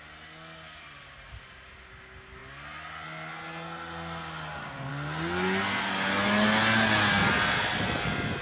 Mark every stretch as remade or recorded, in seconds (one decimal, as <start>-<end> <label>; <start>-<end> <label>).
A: 0.0-8.4 recorded